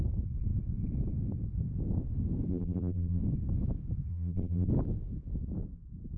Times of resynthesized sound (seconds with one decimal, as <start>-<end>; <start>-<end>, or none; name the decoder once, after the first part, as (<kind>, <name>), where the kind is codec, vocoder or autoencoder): 2.5-3.2 (vocoder, BigVGAN v2); 4.1-4.7